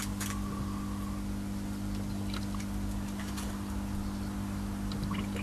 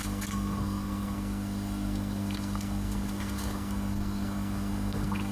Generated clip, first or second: second